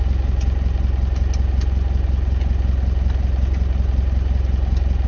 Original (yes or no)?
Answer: yes